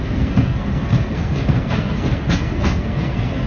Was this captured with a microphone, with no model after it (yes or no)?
no